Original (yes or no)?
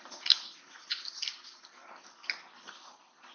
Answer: yes